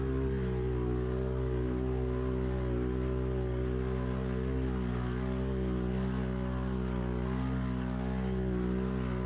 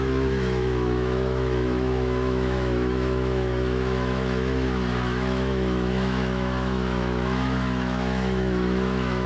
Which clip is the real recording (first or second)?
first